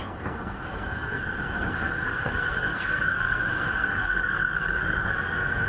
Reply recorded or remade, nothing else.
remade